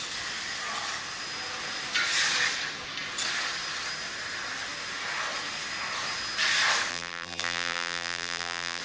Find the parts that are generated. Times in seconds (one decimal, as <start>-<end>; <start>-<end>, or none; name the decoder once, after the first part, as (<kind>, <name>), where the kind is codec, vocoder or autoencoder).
6.9-8.8 (vocoder, BigVGAN v2)